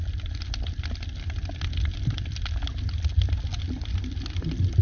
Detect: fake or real real